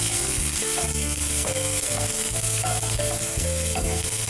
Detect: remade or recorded remade